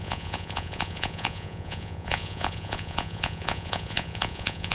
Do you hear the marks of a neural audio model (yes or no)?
yes